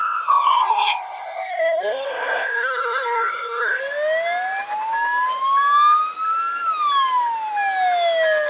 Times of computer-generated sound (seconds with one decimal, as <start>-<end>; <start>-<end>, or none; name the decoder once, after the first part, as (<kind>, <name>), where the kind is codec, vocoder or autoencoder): 0.0-3.8 (codec, SNAC)